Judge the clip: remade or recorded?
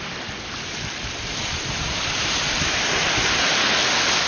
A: recorded